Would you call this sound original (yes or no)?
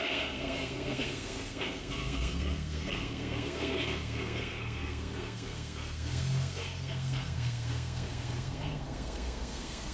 no